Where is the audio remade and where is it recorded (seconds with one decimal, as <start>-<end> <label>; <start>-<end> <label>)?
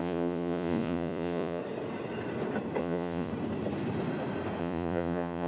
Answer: 0.0-1.6 remade; 1.6-2.8 recorded; 2.8-3.3 remade; 3.3-4.6 recorded; 4.6-5.5 remade